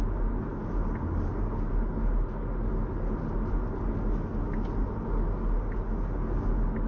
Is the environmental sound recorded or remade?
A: recorded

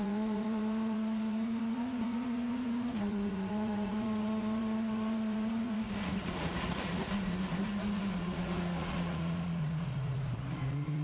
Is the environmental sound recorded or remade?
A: remade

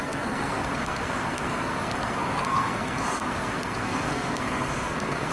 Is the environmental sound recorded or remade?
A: remade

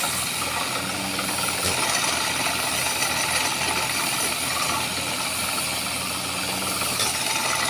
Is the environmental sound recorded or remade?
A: recorded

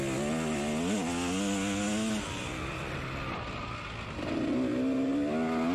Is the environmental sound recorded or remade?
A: recorded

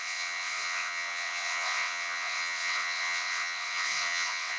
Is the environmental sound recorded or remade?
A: remade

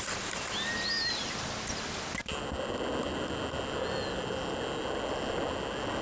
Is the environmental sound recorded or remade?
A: recorded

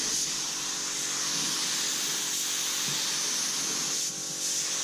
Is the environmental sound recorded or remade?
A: recorded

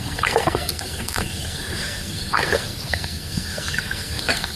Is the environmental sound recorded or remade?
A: remade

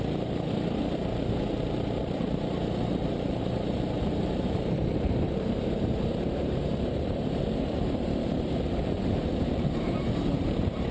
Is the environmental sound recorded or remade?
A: remade